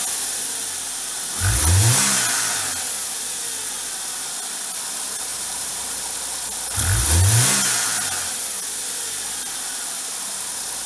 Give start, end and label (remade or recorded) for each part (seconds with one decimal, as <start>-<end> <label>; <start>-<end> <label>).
0.0-5.3 recorded; 5.3-6.0 remade; 6.0-10.9 recorded